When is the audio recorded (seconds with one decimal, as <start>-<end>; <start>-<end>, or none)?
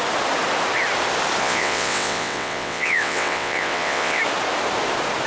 0.0-1.4; 4.2-5.3